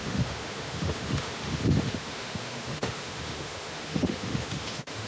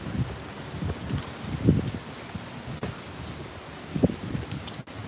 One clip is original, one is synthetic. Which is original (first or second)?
second